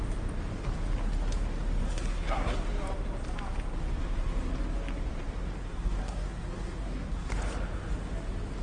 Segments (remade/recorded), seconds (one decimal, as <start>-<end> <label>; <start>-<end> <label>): 0.0-1.8 recorded; 1.8-2.5 remade; 2.5-4.0 recorded; 4.0-4.5 remade; 4.5-5.6 recorded; 5.6-7.3 remade; 7.3-8.6 recorded